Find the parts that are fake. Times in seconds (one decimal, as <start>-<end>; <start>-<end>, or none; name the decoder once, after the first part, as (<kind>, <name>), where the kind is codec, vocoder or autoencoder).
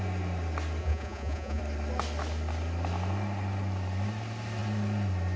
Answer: 0.8-1.6 (vocoder, Vocos)